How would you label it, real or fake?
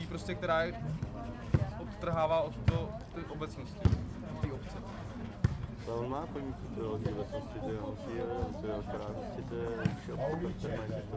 real